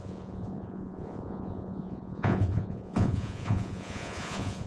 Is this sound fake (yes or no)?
yes